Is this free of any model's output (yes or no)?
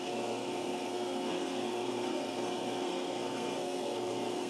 no